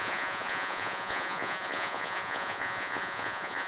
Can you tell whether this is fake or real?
fake